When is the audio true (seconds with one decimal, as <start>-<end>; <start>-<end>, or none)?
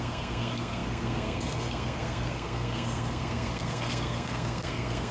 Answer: none